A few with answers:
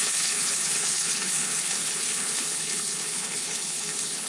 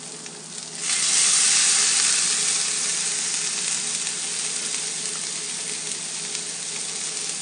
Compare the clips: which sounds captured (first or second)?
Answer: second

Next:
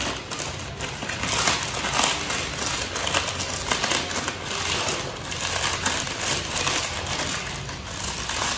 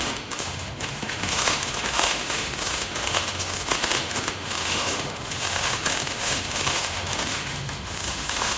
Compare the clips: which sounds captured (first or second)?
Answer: first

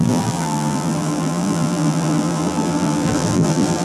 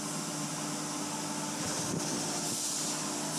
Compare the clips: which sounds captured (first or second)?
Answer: second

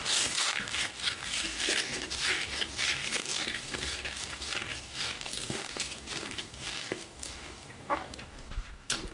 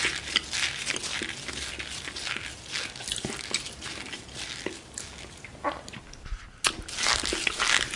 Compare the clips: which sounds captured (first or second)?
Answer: second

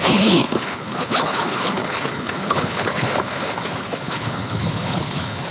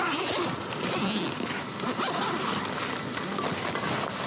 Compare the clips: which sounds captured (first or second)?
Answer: second